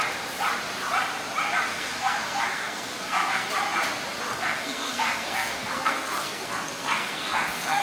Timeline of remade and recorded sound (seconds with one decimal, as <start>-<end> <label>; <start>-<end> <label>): 0.0-1.7 recorded; 1.7-3.5 remade; 3.5-4.3 recorded; 4.3-7.8 remade